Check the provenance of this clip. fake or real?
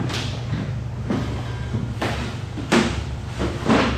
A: real